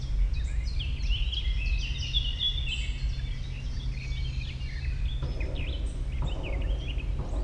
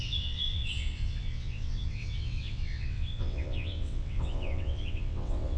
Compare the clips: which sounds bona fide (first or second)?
first